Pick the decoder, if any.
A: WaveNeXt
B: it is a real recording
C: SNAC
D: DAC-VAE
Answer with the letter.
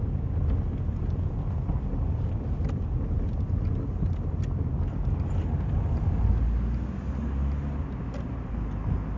B